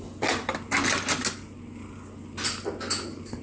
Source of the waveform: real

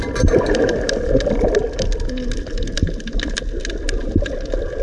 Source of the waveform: real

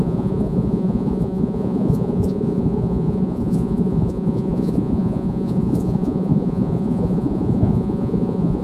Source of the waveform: fake